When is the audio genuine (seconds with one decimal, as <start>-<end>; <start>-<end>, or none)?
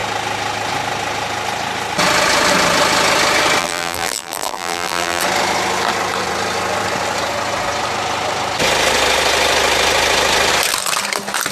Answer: 0.0-3.6; 5.2-11.5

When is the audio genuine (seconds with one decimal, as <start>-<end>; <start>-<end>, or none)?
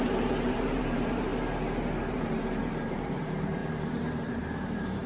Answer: 1.3-2.1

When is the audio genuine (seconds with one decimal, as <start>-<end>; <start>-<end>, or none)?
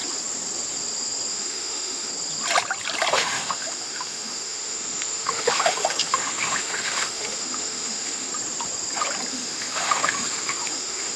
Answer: 0.0-1.3; 2.1-3.1; 8.3-9.3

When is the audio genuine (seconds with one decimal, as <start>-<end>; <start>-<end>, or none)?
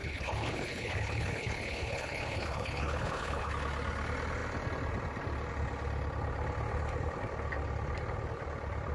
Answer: 3.5-8.9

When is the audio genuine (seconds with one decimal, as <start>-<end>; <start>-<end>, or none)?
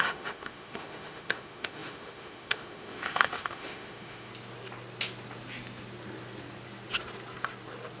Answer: 4.3-8.0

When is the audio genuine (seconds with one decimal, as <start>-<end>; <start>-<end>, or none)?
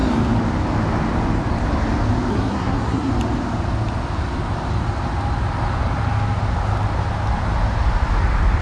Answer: 0.0-2.3; 3.1-8.6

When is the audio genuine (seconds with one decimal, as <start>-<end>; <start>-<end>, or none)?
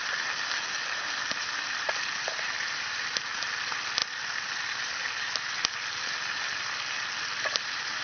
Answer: 0.0-8.0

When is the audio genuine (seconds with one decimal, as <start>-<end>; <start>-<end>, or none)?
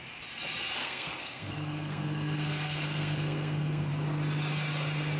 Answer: 0.0-0.8; 3.9-5.2